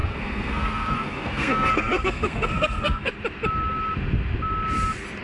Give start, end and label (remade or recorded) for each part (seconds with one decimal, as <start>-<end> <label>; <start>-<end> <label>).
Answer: 0.0-3.1 remade; 3.1-5.2 recorded